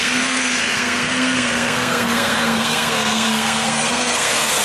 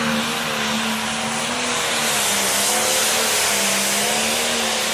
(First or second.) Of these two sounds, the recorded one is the second